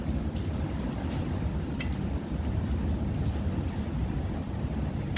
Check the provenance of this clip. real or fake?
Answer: real